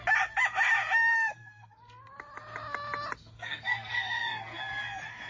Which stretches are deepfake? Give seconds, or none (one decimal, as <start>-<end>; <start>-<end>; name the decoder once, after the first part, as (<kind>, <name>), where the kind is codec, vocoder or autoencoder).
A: 1.1-2.1 (codec, SNAC); 3.2-4.7